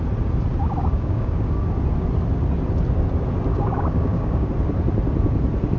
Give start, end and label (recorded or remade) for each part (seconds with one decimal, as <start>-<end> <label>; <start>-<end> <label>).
0.0-0.8 recorded; 0.8-1.7 remade; 1.7-3.5 recorded; 3.5-4.5 remade; 4.5-5.8 recorded